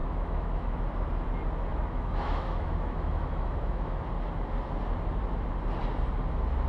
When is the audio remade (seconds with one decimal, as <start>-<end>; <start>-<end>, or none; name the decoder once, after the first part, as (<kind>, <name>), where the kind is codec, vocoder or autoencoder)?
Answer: 0.0-0.8 (autoencoder, DAC-VAE); 1.7-4.0